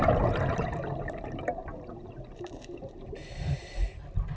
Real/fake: fake